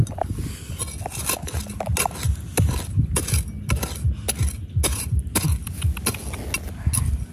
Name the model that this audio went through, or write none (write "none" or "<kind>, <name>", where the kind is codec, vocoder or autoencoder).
none